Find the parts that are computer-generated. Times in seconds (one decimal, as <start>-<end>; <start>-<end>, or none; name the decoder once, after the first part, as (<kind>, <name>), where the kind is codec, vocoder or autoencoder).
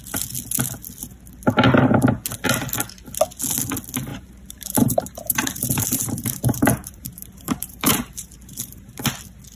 4.1-9.1 (vocoder, BigVGAN v2)